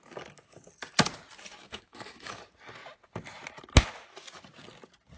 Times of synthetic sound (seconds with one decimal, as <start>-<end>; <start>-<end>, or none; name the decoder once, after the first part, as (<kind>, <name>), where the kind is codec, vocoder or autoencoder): 1.6-2.3 (autoencoder, DAC-VAE)